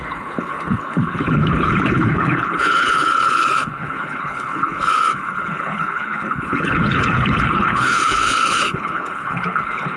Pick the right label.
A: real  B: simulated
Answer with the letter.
B